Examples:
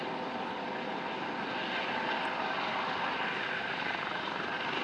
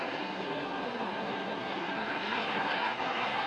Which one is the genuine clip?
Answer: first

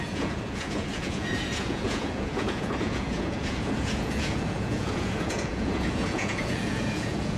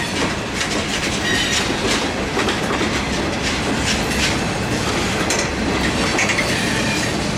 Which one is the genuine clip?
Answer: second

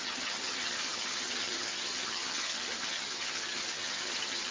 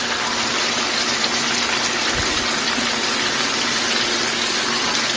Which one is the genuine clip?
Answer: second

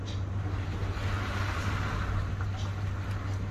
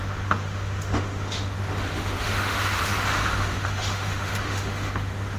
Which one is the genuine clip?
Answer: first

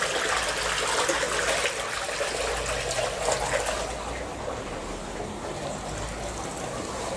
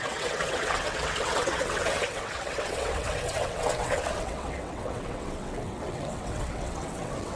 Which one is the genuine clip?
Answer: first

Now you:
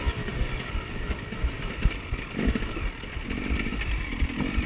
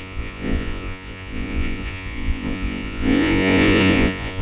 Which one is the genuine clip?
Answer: first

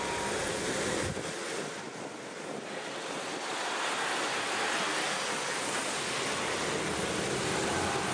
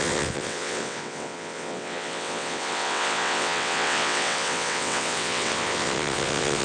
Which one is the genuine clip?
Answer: first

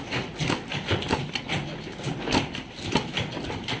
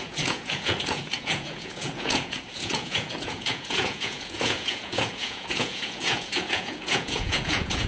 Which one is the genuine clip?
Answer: first